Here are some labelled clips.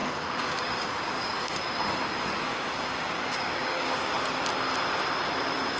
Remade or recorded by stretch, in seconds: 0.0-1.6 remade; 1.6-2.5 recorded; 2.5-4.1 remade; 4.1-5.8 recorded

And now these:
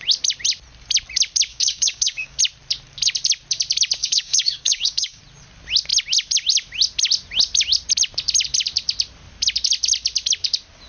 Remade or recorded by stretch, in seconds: 0.0-1.5 recorded; 1.5-2.4 remade; 2.4-4.0 recorded; 4.0-5.2 remade; 5.2-10.9 recorded

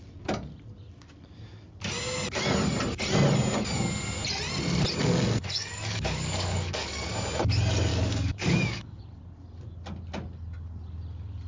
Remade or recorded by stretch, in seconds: 0.0-5.4 recorded; 5.4-7.1 remade; 7.1-7.9 recorded; 7.9-9.0 remade; 9.0-11.5 recorded

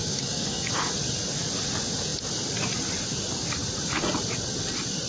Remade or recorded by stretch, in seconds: 0.0-0.8 remade; 0.8-5.1 recorded

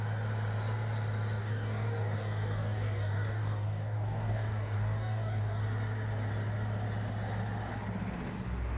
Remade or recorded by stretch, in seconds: 0.0-1.4 recorded; 1.4-5.6 remade; 5.6-8.8 recorded

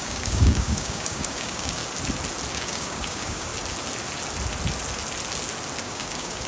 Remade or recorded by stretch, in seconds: 0.0-1.8 remade; 1.8-2.5 recorded; 2.5-3.5 remade; 3.5-5.8 recorded; 5.8-6.5 remade